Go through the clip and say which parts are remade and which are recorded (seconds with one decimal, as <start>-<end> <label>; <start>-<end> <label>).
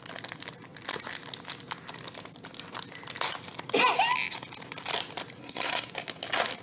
0.0-5.4 recorded; 5.4-5.9 remade; 5.9-6.6 recorded